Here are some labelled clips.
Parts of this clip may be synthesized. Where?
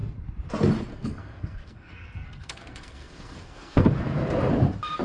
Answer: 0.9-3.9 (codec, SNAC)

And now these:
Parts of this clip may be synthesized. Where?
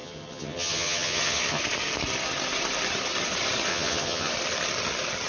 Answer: 0.0-1.6 (vocoder, HiFi-GAN); 3.7-4.3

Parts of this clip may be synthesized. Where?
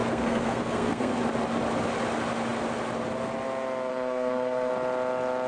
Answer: 0.0-1.2 (codec, SNAC); 3.9-4.7